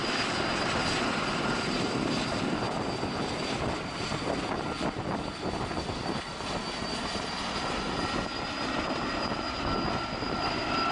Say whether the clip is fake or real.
real